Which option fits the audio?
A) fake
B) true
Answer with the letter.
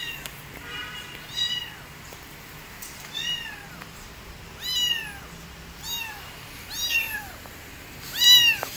A